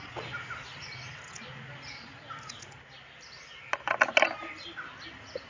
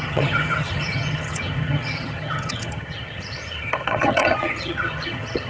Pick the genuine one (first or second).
first